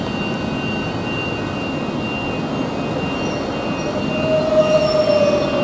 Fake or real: real